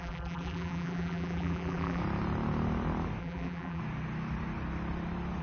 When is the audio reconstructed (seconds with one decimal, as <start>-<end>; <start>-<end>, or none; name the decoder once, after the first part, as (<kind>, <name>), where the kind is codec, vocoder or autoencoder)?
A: 0.0-2.0 (vocoder, BigVGAN v2); 3.2-3.8

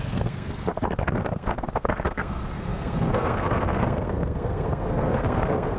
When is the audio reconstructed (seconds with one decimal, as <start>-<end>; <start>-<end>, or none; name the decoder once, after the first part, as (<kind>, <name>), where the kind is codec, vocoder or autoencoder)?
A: 0.0-5.8 (codec, SNAC)

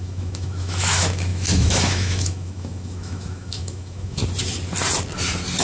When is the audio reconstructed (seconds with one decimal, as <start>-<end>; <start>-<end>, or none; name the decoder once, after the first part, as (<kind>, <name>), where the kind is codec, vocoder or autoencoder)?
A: 0.0-4.2 (autoencoder, DAC-VAE)

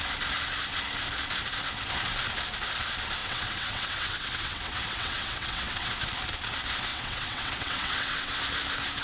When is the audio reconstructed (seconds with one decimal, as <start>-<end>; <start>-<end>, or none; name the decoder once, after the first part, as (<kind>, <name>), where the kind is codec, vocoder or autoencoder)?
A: 3.2-5.9 (vocoder, WaveNeXt); 6.9-8.4

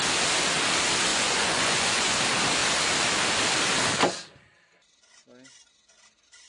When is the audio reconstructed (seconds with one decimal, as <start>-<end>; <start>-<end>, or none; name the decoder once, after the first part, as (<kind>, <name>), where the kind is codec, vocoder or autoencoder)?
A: 1.1-2.2 (vocoder, Vocos)

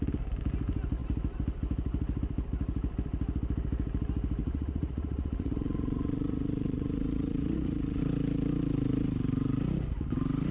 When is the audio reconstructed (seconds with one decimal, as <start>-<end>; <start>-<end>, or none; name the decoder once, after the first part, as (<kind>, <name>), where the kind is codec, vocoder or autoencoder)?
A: 4.4-8.0 (vocoder, Vocos)

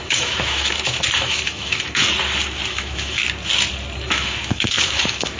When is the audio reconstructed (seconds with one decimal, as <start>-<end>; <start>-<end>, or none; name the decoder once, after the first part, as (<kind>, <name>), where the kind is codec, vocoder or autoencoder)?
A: 0.0-2.0 (autoencoder, DAC-VAE); 2.7-3.2; 4.1-5.4